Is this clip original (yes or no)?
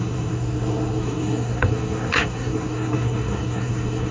no